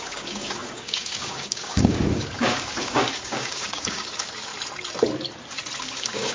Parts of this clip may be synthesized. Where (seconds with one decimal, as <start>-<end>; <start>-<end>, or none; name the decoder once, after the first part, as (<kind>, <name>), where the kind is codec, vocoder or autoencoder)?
0.0-4.5 (codec, DAC); 5.8-6.3